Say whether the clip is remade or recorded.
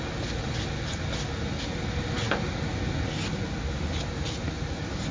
recorded